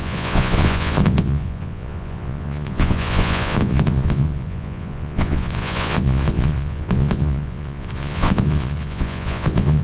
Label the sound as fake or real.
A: fake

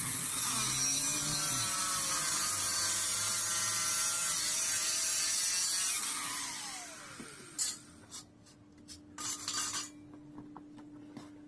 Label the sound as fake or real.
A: real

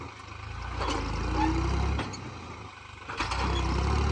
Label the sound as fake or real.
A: real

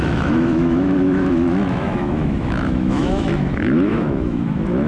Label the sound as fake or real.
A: fake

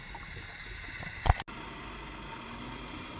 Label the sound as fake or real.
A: real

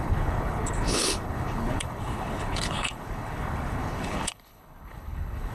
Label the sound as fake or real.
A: fake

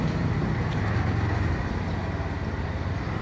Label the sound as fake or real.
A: real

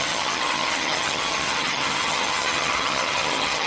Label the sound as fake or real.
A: fake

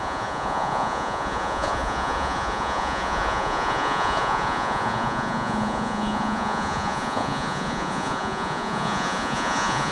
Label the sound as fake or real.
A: fake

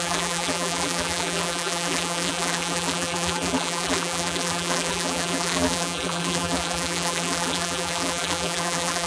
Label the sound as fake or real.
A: fake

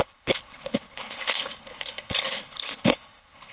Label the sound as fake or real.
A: fake